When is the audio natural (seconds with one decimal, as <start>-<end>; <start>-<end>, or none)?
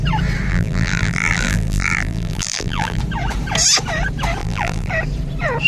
0.0-0.5; 3.0-4.4; 4.9-5.7